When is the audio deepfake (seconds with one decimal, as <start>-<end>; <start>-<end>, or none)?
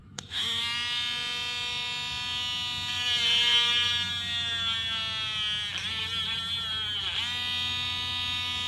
0.0-0.6